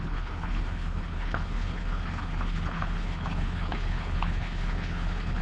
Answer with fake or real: fake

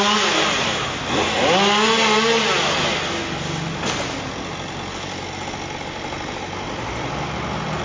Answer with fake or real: real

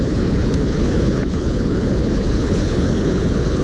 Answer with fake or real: fake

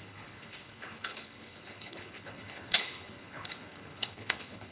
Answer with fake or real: fake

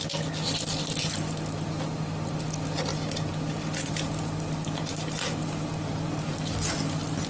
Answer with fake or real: real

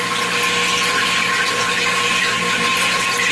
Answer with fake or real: real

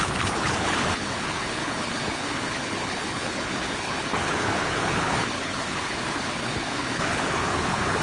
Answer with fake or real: fake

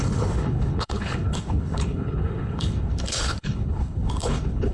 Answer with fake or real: fake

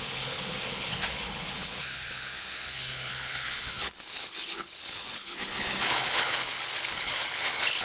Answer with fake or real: fake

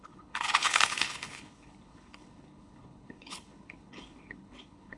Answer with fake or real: fake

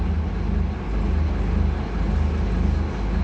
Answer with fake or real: real